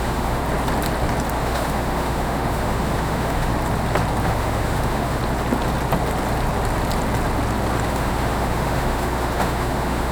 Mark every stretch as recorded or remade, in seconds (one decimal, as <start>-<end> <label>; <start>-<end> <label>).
0.0-0.4 remade; 0.4-1.4 recorded; 1.4-3.5 remade; 3.5-4.2 recorded; 4.2-5.2 remade; 5.2-7.8 recorded; 7.8-10.1 remade